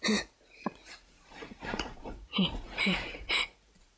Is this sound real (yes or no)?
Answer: no